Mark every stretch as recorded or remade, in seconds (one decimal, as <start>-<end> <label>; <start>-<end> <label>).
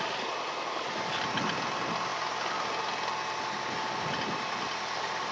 0.0-5.3 recorded